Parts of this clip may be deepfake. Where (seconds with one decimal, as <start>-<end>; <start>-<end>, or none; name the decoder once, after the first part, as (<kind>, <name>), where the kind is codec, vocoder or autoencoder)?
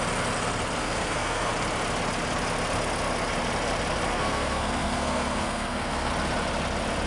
0.8-1.5 (codec, SNAC); 4.1-6.1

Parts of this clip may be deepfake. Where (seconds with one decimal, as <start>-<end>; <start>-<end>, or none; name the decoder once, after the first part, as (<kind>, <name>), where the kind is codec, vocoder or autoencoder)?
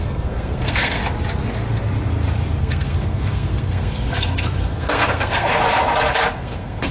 0.0-1.0 (codec, SNAC); 2.6-5.5; 6.3-6.9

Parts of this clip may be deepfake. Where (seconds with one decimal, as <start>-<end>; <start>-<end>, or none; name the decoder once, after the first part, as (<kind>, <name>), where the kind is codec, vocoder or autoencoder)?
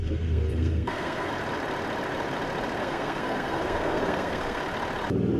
0.0-1.3 (codec, SNAC); 2.8-4.6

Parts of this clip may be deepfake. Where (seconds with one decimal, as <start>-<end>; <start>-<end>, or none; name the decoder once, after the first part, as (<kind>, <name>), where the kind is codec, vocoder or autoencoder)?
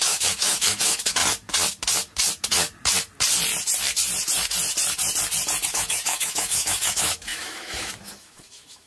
0.0-1.2 (autoencoder, DAC-VAE); 5.7-8.9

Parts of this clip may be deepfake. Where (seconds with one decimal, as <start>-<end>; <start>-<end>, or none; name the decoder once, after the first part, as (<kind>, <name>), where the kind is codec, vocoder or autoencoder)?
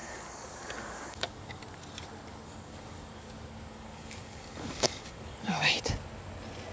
0.0-1.6 (codec, DAC); 2.3-5.7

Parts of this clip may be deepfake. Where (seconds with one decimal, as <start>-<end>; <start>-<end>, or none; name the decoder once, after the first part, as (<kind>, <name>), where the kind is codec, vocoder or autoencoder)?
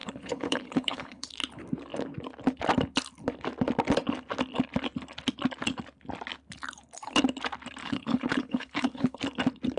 0.0-1.3 (codec, HILCodec); 7.8-9.2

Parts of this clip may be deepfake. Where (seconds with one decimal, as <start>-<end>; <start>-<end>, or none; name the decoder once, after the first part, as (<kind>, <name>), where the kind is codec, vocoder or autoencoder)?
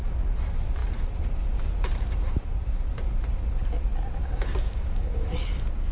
4.2-5.3 (codec, DAC)